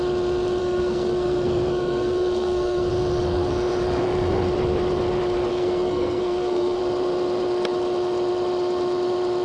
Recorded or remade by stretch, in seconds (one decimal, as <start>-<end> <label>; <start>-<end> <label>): 0.0-0.6 recorded; 0.6-2.9 remade; 2.9-5.5 recorded; 5.5-6.8 remade; 6.8-9.4 recorded